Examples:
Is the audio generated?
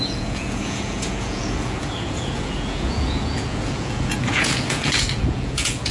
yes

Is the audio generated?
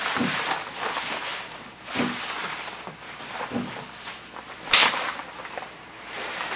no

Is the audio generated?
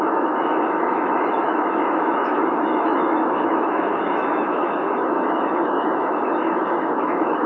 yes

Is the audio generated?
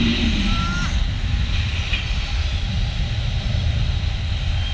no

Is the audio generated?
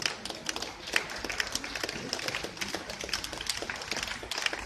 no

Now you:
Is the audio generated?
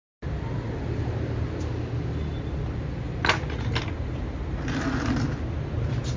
no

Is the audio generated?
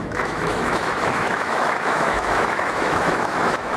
yes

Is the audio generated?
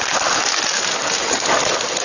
no